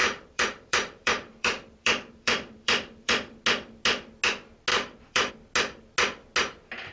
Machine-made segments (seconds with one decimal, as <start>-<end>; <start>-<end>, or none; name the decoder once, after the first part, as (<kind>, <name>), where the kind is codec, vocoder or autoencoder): 0.0-3.4 (vocoder, BigVGAN v2); 4.7-5.3